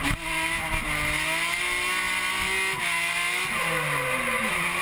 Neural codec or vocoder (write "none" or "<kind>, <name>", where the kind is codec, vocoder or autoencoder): none